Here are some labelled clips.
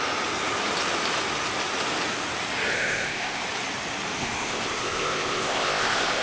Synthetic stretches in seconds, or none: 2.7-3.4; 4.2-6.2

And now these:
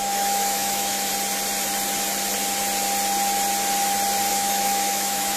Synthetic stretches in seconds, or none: 0.0-1.1; 4.3-5.4

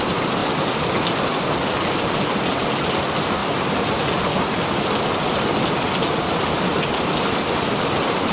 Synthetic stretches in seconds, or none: none

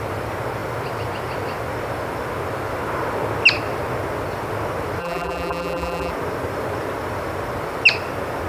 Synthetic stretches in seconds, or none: 5.0-6.1

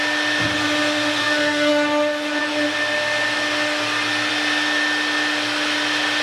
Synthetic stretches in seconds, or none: 1.2-1.7

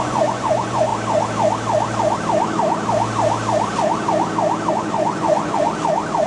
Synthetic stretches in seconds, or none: 0.0-0.9; 4.7-5.7

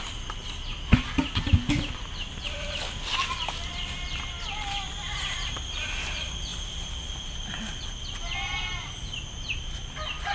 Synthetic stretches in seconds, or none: none